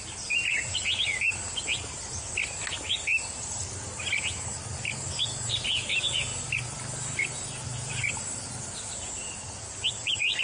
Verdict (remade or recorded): recorded